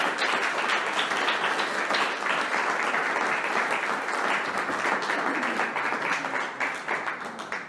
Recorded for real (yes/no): yes